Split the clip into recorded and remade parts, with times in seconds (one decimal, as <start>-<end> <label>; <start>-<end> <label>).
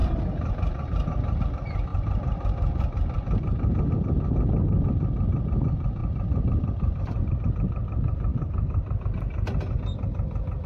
0.0-1.4 remade; 1.4-1.9 recorded; 1.9-3.9 remade; 3.9-6.0 recorded; 6.0-7.4 remade; 7.4-8.3 recorded; 8.3-9.0 remade; 9.0-10.7 recorded